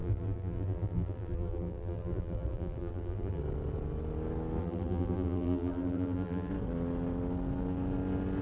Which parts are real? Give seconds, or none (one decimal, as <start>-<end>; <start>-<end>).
3.4-4.6; 6.5-8.4